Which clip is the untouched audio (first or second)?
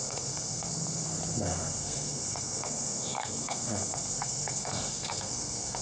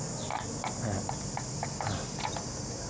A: second